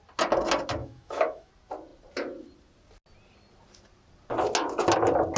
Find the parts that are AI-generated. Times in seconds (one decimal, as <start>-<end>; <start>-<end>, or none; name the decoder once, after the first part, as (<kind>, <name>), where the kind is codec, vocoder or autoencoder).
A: 0.8-1.5 (autoencoder, DAC-VAE)